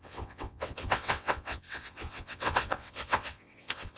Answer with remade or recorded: remade